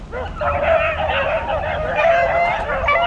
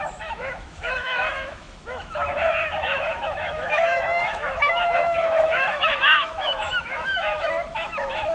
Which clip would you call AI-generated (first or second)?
second